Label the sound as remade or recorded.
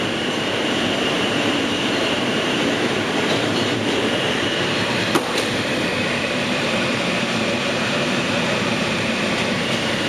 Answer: remade